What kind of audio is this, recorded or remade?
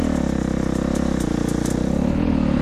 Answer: recorded